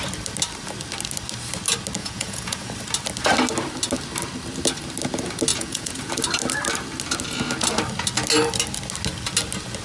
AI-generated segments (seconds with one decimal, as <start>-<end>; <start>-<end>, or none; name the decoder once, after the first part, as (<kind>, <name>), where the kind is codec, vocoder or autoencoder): 2.0-2.7 (vocoder, Vocos); 5.5-6.1